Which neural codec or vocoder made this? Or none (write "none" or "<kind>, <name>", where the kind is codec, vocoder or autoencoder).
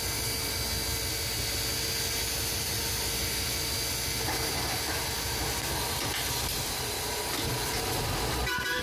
none